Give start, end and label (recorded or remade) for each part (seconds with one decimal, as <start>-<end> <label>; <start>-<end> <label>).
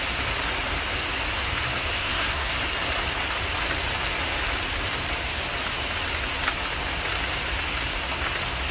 0.0-2.0 recorded; 2.0-2.6 remade; 2.6-8.7 recorded